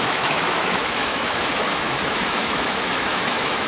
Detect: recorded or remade remade